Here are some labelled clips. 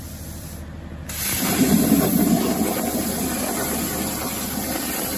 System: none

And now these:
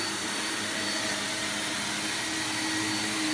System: none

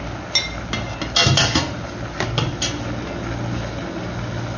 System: none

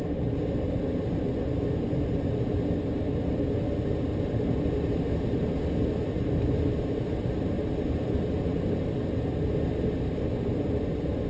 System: none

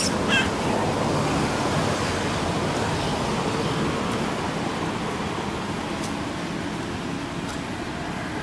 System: none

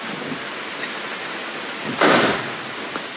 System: none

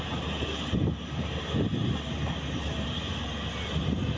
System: none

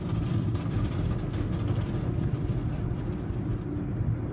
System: none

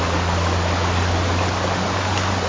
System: none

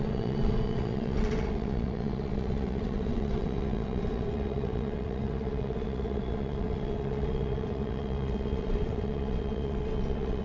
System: vocoder, WaveNeXt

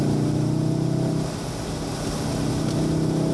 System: none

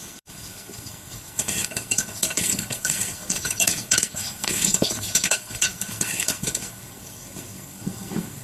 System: codec, SNAC